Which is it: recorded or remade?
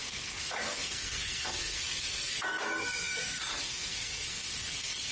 remade